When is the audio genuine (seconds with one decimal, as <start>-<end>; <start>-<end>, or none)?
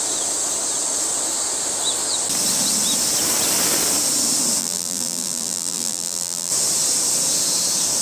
0.0-4.6; 6.5-8.0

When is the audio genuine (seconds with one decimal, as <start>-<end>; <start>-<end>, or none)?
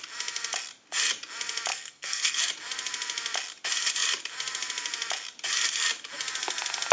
0.0-1.7; 2.4-6.9